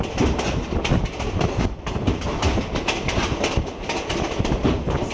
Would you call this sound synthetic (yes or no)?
no